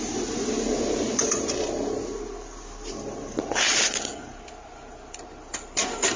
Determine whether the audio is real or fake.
real